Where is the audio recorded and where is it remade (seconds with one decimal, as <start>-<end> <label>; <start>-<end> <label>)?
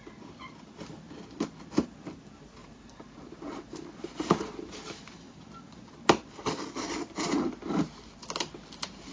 0.0-2.6 recorded; 2.6-5.2 remade; 5.2-9.1 recorded